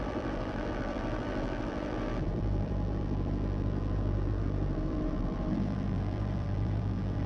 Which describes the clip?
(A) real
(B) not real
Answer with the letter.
B